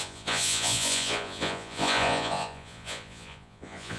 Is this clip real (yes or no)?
no